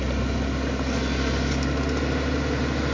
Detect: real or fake fake